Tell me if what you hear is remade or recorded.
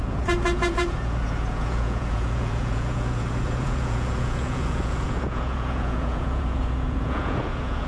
remade